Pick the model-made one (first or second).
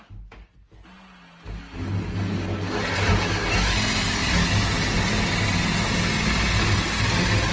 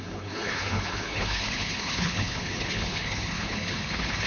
second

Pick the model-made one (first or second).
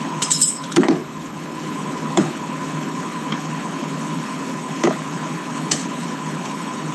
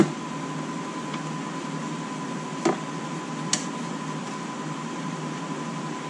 first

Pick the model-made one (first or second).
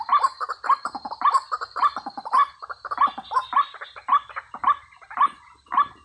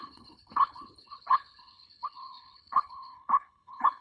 second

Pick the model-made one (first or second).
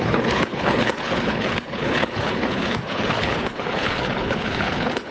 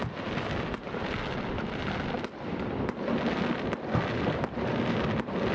first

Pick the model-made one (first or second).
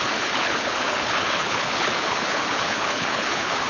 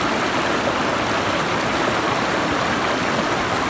first